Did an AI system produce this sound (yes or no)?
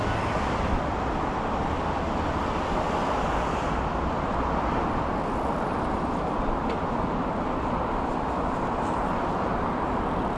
no